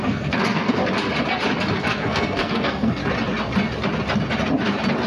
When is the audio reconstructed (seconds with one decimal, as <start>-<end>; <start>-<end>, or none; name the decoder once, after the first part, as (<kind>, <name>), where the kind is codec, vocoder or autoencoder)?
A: 0.0-0.8 (codec, SNAC); 1.8-3.0